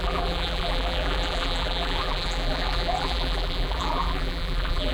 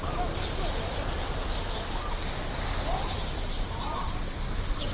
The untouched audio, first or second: second